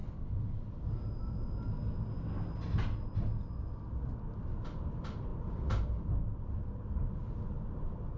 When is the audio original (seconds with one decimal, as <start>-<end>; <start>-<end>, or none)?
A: 0.0-8.2